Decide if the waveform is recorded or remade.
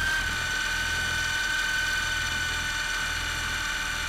recorded